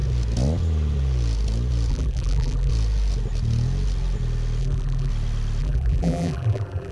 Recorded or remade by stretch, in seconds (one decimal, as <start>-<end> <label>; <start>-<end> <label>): 0.0-1.9 recorded; 1.9-2.7 remade; 2.7-4.6 recorded; 4.6-5.1 remade; 5.1-5.6 recorded; 5.6-6.9 remade